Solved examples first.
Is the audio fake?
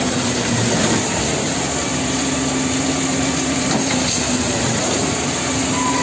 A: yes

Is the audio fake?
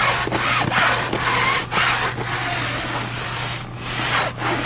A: no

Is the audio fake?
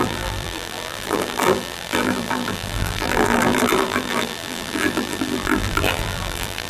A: yes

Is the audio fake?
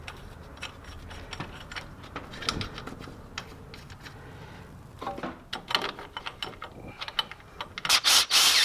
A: no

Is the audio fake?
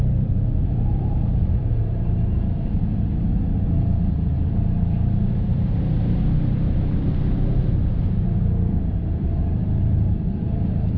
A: yes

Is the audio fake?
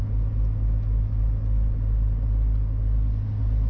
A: no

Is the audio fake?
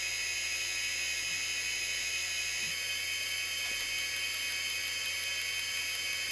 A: no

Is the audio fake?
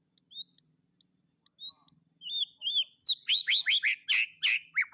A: no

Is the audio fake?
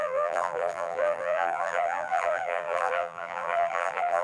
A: yes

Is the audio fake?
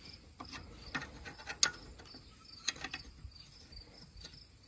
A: no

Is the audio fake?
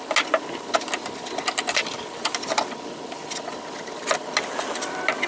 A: no